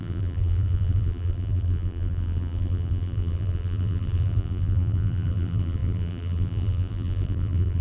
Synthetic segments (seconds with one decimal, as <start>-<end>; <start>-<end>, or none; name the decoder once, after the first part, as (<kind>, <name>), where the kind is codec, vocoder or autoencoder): 0.0-7.8 (vocoder, BigVGAN v2)